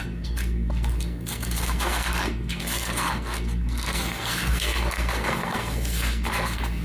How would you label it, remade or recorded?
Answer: remade